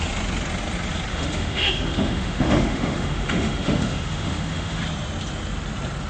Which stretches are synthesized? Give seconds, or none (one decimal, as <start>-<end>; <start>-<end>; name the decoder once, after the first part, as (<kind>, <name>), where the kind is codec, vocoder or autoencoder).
1.1-4.8 (autoencoder, DAC-VAE)